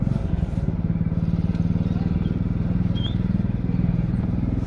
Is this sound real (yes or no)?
no